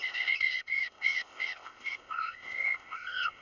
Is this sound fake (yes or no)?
yes